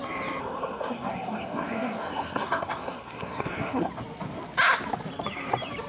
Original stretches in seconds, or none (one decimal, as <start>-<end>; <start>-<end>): 0.0-0.4; 3.9-5.9